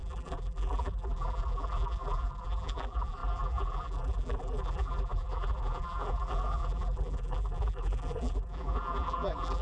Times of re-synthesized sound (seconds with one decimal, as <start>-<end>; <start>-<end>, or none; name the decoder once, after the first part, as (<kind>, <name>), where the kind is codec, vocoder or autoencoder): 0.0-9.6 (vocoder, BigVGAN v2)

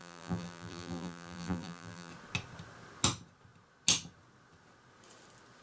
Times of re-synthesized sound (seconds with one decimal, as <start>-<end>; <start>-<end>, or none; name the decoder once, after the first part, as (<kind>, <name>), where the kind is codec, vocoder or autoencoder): 0.0-2.1 (vocoder, BigVGAN v2)

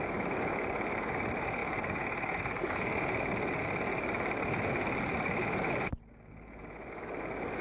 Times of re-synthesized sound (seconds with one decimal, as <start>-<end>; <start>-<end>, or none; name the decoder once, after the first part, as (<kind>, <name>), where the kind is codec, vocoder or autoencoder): none

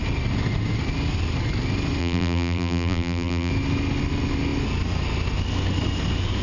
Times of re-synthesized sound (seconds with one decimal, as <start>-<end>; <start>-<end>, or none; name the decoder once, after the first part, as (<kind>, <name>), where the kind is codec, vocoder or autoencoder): 2.0-3.5 (vocoder, BigVGAN v2)

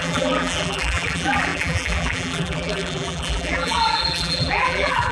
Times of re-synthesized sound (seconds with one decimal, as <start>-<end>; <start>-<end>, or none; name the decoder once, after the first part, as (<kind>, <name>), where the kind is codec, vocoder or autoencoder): 0.0-5.1 (vocoder, BigVGAN v2)

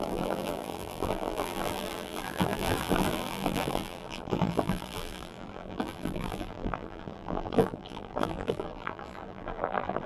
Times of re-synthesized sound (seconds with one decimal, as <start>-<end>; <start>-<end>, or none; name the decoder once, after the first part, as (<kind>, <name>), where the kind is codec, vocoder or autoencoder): 0.0-10.1 (vocoder, BigVGAN v2)